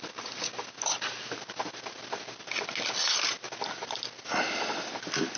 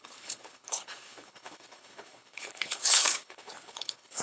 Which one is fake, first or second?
second